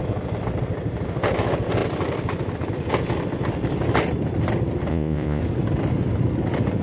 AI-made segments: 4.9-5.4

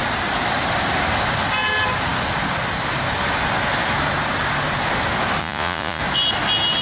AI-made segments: 5.4-6.0

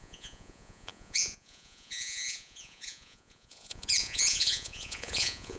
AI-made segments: 0.0-5.6

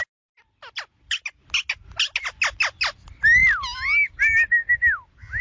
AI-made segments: none

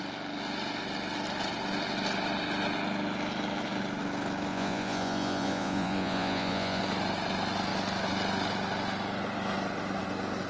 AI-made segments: 4.5-6.8

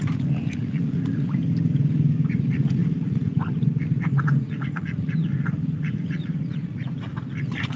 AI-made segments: 0.0-1.4; 2.3-7.8

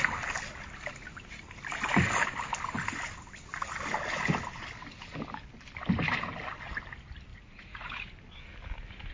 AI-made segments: 7.3-8.1